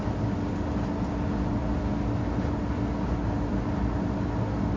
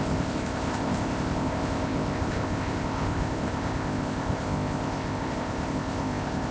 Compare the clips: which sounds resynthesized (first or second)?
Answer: second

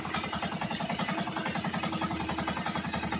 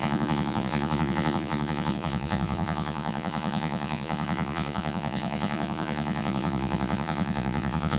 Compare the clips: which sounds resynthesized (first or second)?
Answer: second